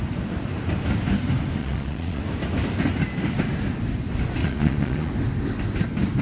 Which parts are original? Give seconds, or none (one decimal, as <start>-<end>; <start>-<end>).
0.0-1.6; 2.2-4.4; 5.1-6.2